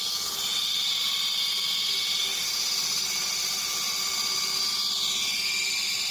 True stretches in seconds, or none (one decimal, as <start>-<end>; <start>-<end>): 0.0-6.1